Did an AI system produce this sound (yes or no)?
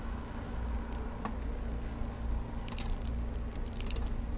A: no